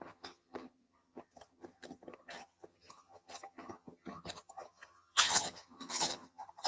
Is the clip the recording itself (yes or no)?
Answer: no